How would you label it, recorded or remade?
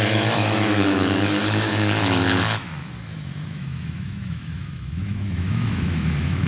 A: remade